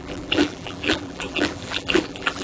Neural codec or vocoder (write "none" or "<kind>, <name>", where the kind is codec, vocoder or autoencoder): vocoder, BigVGAN v2